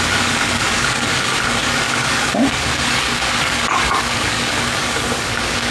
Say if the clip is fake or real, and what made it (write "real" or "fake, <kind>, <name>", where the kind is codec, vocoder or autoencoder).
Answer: fake, codec, DAC